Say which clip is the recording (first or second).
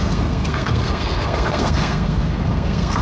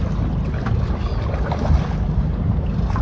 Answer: second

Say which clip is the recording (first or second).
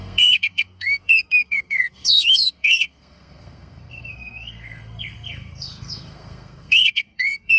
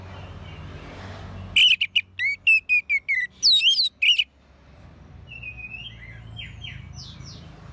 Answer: second